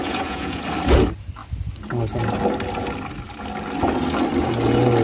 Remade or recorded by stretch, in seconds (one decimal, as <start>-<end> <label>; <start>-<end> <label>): 0.0-0.6 remade; 0.6-5.0 recorded